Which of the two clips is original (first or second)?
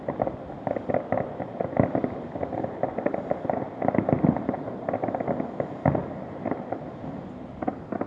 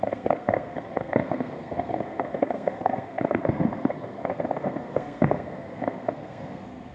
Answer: first